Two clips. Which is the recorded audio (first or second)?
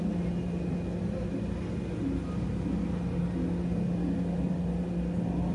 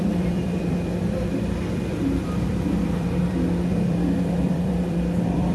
first